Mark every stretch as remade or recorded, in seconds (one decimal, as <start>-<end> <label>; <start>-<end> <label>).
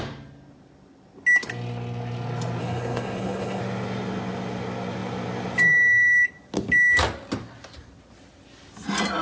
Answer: 0.0-2.6 recorded; 2.6-3.6 remade; 3.6-9.2 recorded